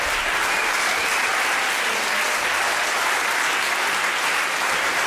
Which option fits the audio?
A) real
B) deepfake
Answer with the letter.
A